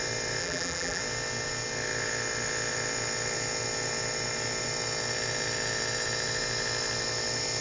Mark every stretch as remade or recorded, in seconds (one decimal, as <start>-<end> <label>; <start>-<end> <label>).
0.0-0.4 recorded; 0.4-1.0 remade; 1.0-7.6 recorded